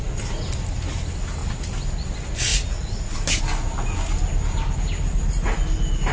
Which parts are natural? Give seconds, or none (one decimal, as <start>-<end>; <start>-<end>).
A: 0.0-2.5; 3.2-6.1